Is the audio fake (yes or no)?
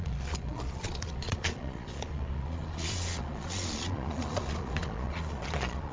yes